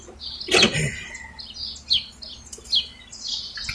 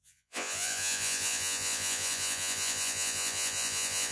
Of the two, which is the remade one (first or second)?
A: second